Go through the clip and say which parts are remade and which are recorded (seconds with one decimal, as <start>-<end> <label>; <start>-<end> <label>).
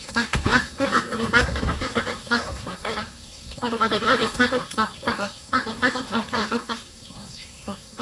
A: 0.0-8.0 remade